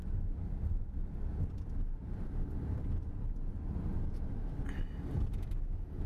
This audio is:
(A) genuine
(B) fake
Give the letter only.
A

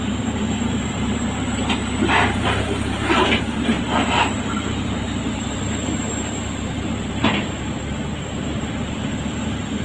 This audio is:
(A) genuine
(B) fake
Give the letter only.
B